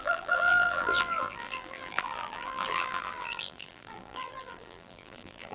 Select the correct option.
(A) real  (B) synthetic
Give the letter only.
B